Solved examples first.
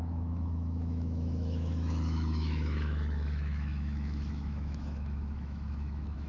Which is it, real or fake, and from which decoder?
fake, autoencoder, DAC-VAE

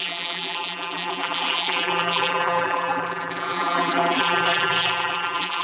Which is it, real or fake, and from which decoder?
fake, vocoder, BigVGAN v2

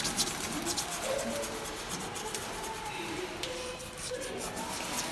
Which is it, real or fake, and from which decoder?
real